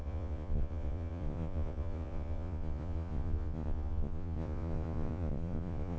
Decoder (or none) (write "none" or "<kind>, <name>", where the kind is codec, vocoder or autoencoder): vocoder, Vocos